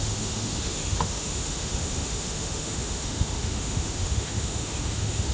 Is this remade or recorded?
remade